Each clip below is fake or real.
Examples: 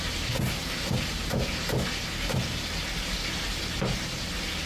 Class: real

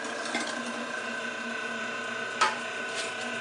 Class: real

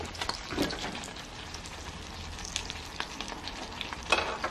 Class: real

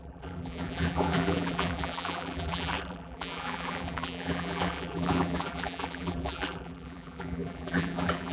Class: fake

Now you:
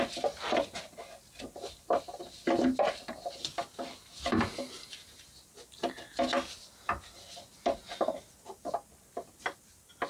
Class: real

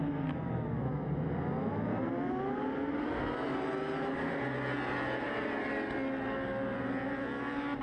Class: real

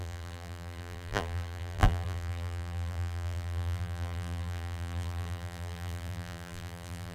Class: fake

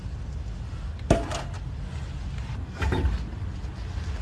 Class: real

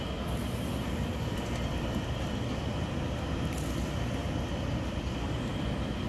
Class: real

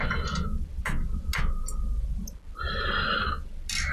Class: real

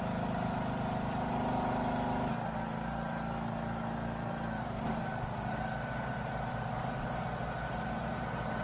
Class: real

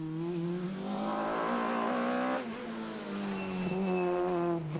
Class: real